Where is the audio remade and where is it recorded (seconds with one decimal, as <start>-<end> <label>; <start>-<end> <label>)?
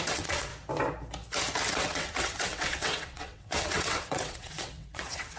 0.0-0.5 remade; 0.5-1.7 recorded; 1.7-5.4 remade